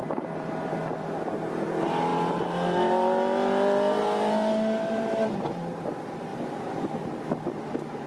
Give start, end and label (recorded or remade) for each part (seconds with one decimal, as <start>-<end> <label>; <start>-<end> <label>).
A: 0.0-0.8 remade; 0.8-8.1 recorded